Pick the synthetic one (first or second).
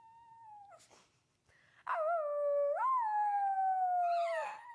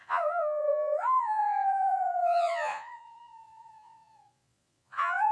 second